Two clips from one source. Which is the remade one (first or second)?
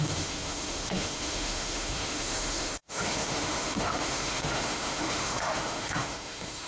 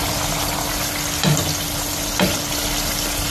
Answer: first